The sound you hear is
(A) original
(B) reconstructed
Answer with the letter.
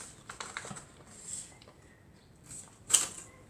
B